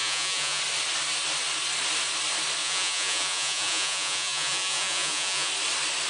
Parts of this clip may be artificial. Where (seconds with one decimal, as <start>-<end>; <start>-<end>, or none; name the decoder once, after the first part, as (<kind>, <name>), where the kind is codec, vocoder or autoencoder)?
0.0-0.6 (vocoder, Vocos); 2.6-5.5